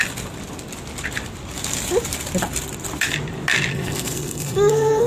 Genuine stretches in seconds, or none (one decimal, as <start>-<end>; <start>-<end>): 0.0-3.7